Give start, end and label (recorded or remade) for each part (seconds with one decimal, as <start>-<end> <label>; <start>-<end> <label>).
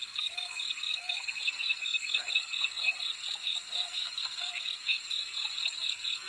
0.0-6.3 remade